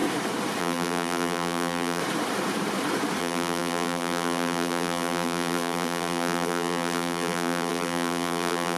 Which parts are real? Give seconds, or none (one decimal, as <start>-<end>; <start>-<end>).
0.0-0.6; 2.0-3.2